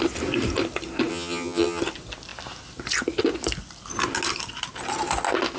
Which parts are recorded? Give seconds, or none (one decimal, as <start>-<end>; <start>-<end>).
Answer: 0.0-1.1; 1.8-5.6